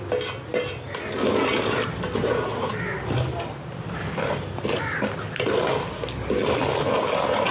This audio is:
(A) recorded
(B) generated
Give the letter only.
A